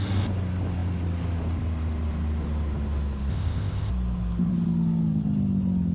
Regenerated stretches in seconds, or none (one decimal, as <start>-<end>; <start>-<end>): 3.3-3.9